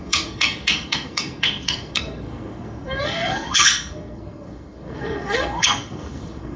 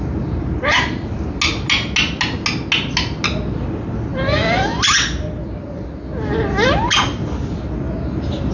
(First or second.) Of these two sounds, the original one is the second